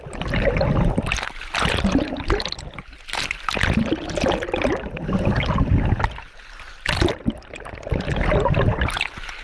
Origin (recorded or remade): recorded